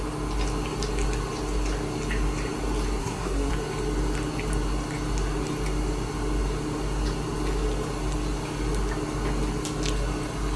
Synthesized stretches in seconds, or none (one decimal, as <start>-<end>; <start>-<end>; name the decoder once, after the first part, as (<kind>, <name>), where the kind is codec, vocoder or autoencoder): 3.0-3.5 (codec, SNAC)